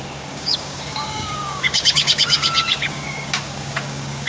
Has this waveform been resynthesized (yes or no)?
yes